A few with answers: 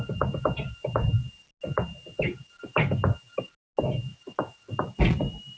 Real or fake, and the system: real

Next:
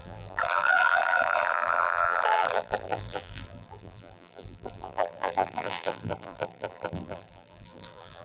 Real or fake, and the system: fake, vocoder, BigVGAN v2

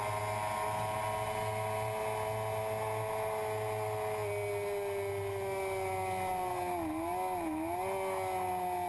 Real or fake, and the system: real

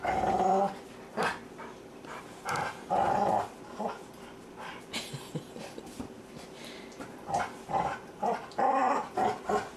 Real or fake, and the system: fake, vocoder, BigVGAN v2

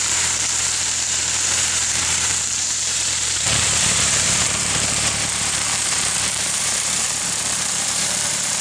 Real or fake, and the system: fake, vocoder, BigVGAN v2